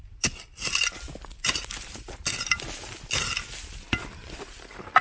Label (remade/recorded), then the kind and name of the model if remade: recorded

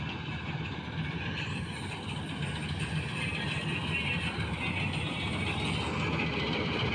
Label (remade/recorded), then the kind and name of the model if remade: recorded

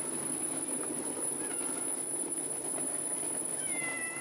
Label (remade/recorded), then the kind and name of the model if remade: recorded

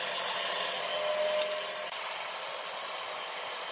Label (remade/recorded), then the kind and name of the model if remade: recorded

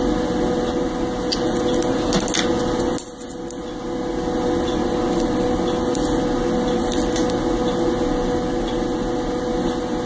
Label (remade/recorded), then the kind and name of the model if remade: recorded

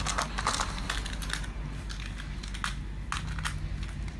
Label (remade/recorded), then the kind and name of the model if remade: recorded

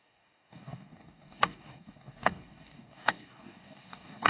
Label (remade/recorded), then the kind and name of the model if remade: remade, codec, DAC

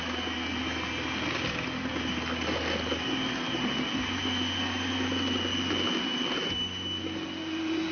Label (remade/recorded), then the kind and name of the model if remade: recorded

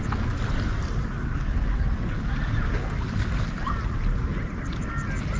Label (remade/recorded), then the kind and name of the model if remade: recorded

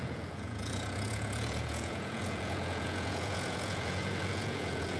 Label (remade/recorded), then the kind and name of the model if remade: remade, vocoder, Vocos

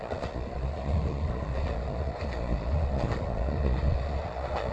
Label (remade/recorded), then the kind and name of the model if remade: remade, vocoder, Vocos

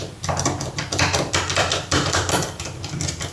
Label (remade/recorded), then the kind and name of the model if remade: remade, vocoder, BigVGAN v2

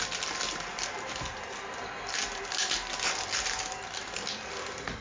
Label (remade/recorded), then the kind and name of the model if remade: recorded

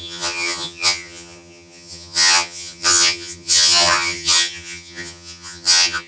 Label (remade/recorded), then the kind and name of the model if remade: remade, vocoder, HiFi-GAN